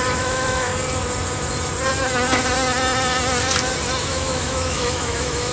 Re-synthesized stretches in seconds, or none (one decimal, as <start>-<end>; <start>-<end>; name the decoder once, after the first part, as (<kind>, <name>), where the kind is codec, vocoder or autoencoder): 0.0-0.7 (autoencoder, DAC-VAE); 4.0-5.5